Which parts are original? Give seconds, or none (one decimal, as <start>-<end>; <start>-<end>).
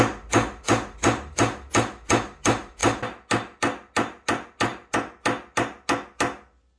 0.0-6.8